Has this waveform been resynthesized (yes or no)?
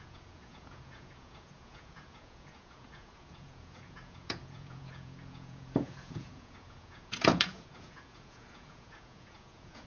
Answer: yes